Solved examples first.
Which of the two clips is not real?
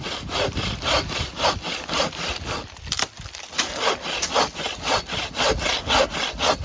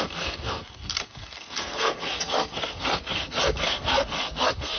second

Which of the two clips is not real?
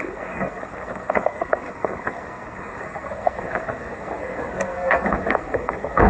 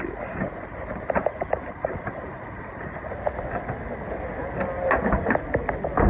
first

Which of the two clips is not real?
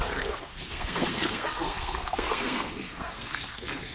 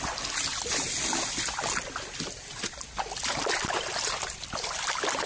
first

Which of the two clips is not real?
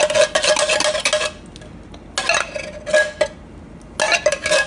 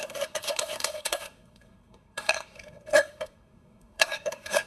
second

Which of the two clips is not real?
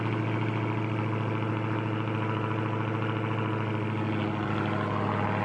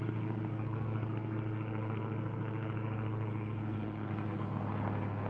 second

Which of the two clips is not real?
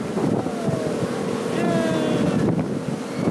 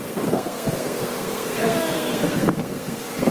second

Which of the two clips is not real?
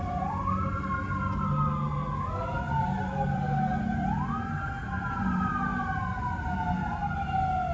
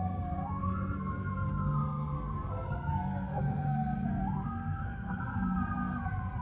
second